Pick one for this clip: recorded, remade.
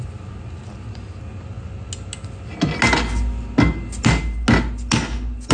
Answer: recorded